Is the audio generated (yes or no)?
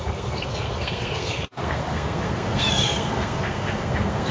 yes